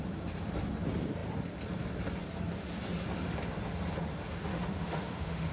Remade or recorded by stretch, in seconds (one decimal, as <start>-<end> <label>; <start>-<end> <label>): 0.0-4.5 recorded; 4.5-5.5 remade